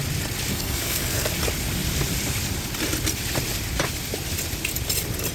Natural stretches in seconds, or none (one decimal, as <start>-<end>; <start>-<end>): 0.0-0.5; 1.3-5.3